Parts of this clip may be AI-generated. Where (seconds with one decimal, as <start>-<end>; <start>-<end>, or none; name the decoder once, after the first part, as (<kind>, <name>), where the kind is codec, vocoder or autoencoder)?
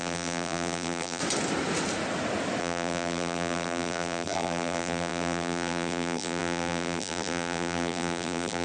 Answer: 0.0-1.2 (vocoder, BigVGAN v2); 2.6-8.6